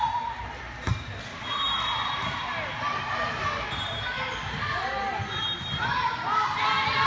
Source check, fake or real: real